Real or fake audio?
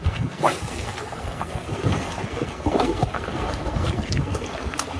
fake